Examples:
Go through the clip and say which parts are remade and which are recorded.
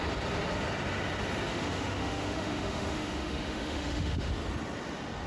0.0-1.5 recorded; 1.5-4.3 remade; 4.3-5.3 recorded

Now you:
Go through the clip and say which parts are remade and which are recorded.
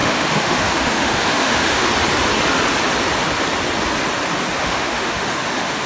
0.0-1.9 remade; 1.9-4.6 recorded; 4.6-5.9 remade